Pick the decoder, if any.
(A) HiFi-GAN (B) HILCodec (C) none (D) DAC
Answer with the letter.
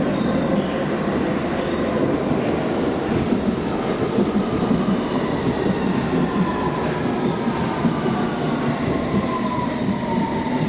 C